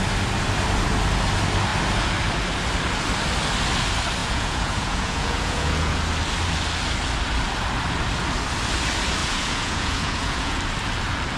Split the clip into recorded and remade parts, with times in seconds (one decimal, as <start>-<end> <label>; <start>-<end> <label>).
0.0-4.2 recorded; 4.2-6.0 remade; 6.0-9.2 recorded; 9.2-10.6 remade; 10.6-11.4 recorded